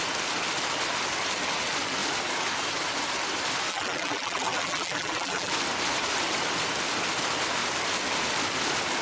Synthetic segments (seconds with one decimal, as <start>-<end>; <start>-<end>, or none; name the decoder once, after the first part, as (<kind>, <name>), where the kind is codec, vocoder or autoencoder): 3.7-5.5 (vocoder, BigVGAN v2)